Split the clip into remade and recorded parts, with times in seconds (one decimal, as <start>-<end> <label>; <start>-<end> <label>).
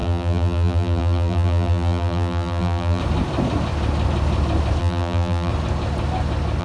0.0-3.0 remade; 3.0-4.8 recorded; 4.8-5.5 remade; 5.5-6.6 recorded